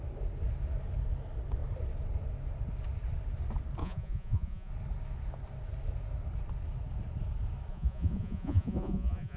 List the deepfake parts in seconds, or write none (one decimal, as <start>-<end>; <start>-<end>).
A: 3.8-4.7; 7.7-9.4